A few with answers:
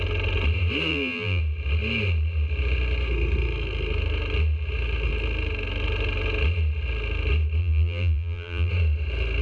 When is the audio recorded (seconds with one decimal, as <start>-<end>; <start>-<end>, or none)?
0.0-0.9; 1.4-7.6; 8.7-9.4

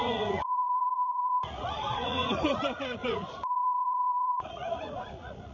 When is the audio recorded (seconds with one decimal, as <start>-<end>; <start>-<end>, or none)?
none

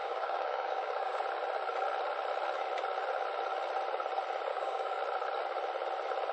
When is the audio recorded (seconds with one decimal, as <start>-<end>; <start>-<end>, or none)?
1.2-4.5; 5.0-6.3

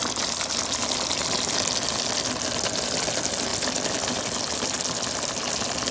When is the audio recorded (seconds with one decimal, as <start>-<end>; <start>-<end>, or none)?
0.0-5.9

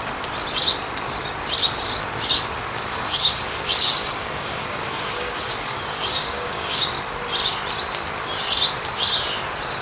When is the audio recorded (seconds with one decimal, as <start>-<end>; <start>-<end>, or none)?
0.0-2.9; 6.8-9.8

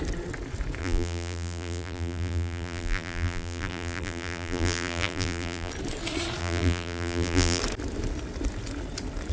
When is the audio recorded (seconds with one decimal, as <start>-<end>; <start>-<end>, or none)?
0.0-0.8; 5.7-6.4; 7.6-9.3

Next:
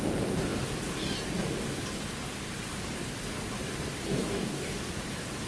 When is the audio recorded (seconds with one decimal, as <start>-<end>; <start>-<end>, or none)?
0.0-4.2; 4.8-5.5